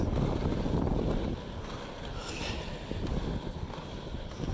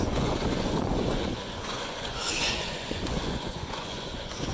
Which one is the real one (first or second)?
first